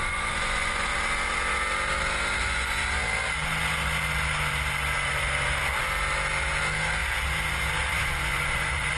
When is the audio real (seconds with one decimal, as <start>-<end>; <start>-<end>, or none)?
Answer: 0.9-2.4; 2.8-7.9